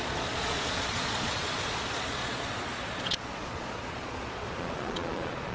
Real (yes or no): no